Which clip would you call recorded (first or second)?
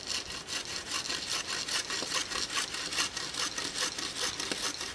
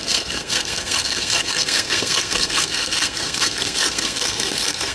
first